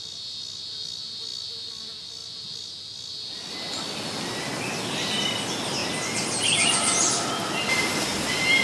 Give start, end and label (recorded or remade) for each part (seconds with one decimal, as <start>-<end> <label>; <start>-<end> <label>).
0.0-8.6 recorded